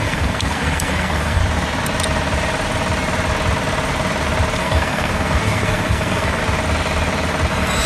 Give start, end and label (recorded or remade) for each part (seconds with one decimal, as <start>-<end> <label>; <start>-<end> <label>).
0.0-1.4 remade; 1.4-4.6 recorded; 4.6-6.4 remade; 6.4-7.5 recorded; 7.5-7.9 remade